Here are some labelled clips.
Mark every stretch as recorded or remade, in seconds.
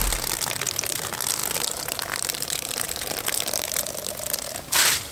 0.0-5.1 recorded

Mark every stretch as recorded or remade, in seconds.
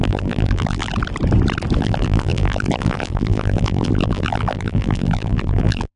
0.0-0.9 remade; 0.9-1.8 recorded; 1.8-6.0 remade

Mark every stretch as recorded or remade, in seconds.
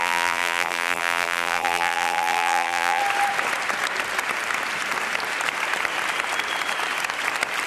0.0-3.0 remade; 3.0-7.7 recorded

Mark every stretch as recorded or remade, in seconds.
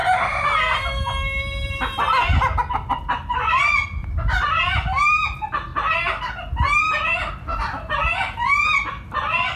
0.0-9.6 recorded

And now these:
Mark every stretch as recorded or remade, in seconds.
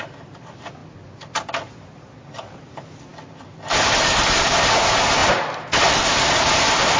0.0-5.2 remade; 5.2-5.9 recorded; 5.9-7.0 remade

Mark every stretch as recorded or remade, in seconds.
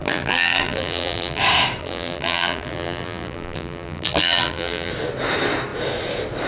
0.0-1.4 remade; 1.4-1.8 recorded; 1.8-4.9 remade; 4.9-6.5 recorded